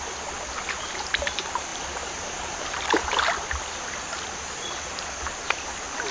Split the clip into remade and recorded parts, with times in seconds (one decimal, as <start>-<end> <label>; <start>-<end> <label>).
0.0-1.7 recorded; 1.7-3.2 remade; 3.2-6.1 recorded